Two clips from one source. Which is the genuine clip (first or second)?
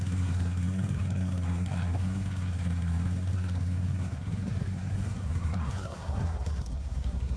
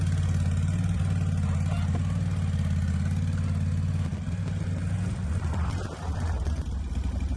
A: second